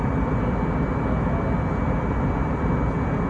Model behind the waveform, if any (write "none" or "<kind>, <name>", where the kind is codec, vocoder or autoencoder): none